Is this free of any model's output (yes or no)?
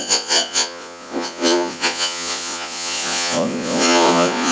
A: no